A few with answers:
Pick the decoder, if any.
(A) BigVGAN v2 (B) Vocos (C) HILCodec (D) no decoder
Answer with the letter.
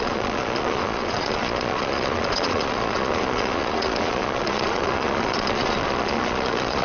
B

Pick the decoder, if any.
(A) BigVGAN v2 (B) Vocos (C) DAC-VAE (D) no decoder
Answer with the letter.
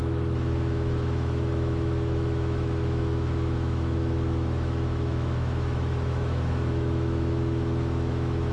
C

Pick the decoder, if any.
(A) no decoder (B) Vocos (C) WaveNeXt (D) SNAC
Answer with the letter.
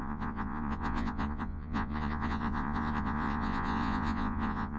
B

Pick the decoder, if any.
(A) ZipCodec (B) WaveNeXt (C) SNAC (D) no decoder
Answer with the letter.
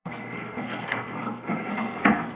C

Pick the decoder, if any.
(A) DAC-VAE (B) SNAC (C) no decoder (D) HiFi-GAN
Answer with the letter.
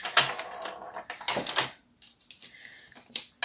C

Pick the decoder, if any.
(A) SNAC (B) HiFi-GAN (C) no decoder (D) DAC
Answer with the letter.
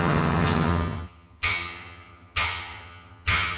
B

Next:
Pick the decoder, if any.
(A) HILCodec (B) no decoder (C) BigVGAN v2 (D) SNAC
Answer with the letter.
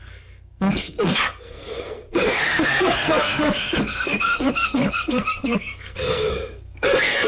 D